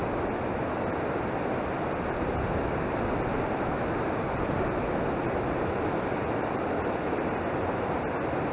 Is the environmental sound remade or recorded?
recorded